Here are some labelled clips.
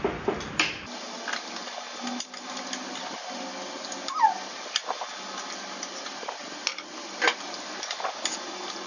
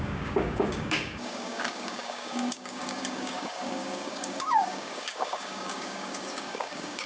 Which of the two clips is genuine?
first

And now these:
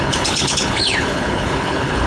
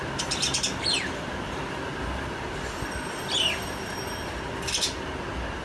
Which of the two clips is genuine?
second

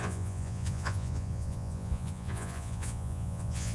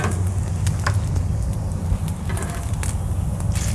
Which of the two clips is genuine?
second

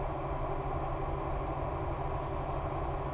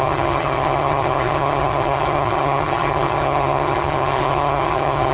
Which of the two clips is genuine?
first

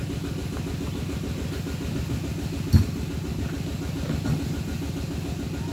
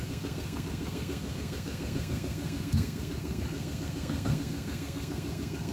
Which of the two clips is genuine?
first